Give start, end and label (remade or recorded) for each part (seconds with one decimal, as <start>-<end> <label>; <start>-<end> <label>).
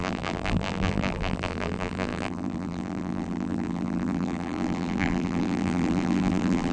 0.0-6.7 remade